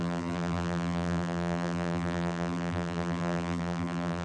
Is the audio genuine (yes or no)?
no